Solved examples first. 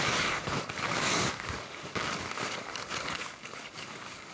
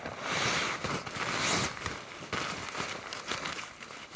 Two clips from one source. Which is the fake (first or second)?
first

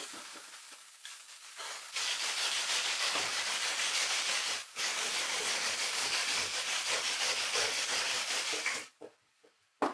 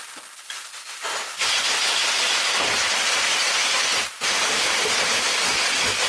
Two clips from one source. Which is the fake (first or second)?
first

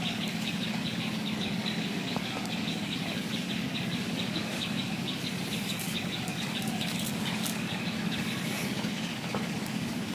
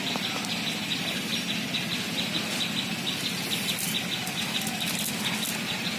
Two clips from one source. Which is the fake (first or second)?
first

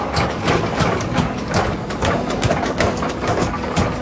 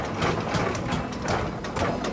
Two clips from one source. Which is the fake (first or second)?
first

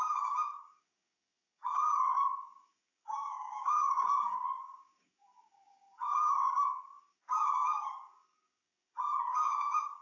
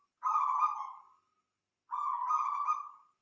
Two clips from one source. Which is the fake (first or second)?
first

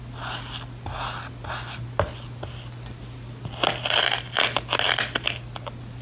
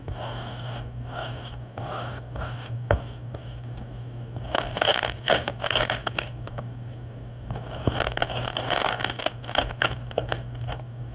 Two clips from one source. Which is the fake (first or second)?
second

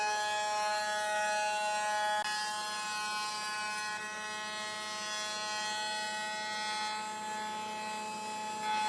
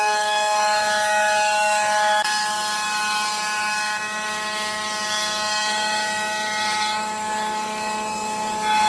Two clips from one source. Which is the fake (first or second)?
second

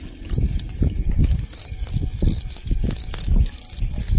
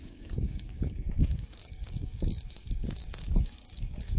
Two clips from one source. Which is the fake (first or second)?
second